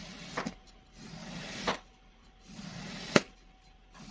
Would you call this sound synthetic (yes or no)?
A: no